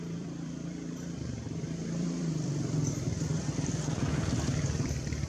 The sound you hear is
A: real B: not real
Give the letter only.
B